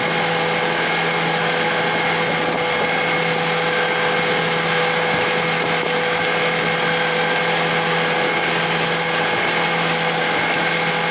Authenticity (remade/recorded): recorded